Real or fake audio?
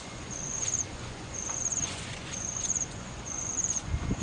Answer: fake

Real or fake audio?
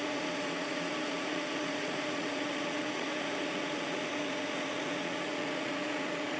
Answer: fake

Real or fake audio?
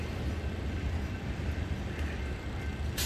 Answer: real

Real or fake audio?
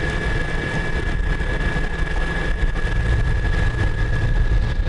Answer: real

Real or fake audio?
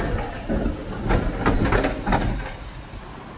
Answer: real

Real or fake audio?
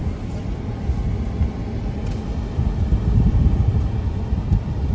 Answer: real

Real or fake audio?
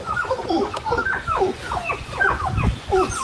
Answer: fake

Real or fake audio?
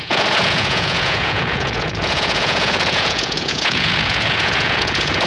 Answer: fake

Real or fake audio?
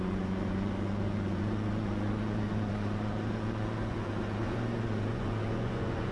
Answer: fake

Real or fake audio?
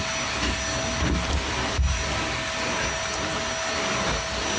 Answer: real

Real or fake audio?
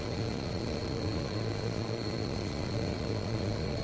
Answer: fake